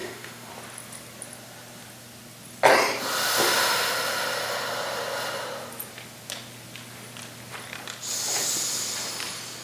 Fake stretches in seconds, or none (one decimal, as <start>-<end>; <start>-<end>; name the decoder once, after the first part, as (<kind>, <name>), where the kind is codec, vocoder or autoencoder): 0.0-0.5 (autoencoder, DAC-VAE)